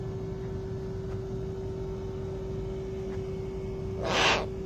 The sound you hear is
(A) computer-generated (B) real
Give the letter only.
B